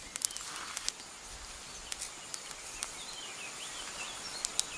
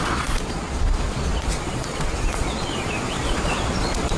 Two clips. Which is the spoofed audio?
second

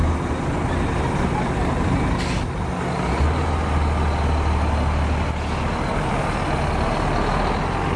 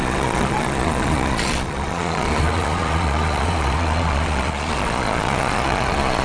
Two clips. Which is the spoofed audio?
second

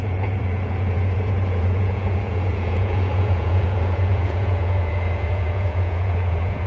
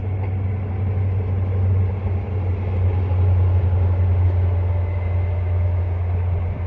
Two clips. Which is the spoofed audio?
first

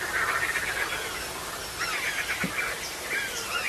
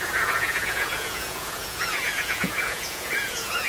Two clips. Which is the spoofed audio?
second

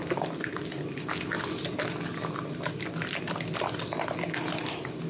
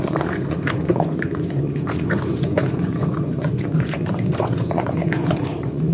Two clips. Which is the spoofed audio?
second